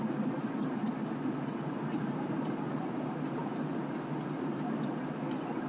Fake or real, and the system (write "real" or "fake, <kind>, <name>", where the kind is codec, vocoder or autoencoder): real